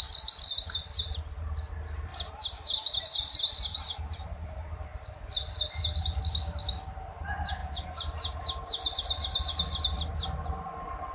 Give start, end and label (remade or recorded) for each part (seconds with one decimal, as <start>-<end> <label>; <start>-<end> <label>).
0.0-11.1 recorded